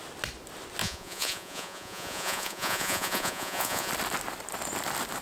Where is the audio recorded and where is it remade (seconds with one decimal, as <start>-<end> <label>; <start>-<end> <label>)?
0.0-0.8 recorded; 0.8-3.9 remade; 3.9-5.2 recorded